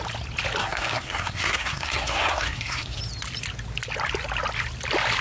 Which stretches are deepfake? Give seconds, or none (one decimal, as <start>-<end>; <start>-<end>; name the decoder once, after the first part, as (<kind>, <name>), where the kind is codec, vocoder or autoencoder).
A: 0.6-3.0 (codec, SNAC)